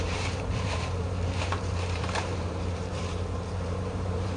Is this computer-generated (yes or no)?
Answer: yes